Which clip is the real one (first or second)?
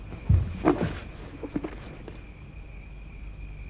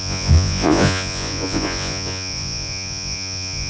first